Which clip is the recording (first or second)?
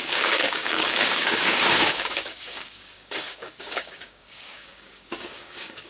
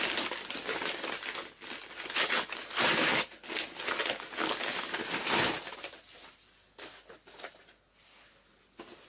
second